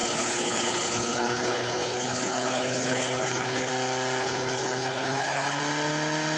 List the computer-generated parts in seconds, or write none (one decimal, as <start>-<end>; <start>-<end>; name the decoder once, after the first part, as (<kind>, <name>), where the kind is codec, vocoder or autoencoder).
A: 0.0-3.7 (codec, HILCodec); 4.2-5.6